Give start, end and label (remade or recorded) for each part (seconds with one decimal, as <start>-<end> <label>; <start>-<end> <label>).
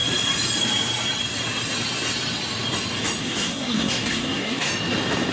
0.0-3.2 recorded; 3.2-4.7 remade; 4.7-5.3 recorded